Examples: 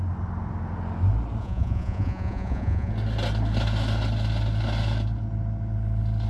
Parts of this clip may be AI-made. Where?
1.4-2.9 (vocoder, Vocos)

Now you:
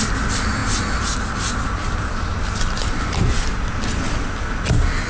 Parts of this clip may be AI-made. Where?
none